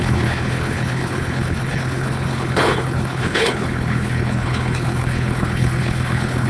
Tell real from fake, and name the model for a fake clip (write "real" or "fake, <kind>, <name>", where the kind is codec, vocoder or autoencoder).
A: fake, codec, HILCodec